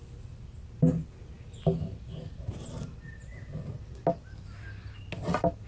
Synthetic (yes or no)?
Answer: no